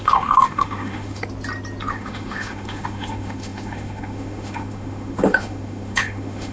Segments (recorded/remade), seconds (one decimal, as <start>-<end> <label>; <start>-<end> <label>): 0.0-1.2 remade; 1.2-1.9 recorded; 1.9-6.5 remade